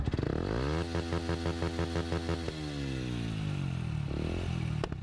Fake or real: real